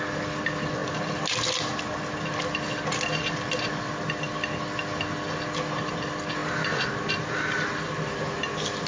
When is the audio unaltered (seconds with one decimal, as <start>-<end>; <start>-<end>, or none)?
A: 0.0-8.9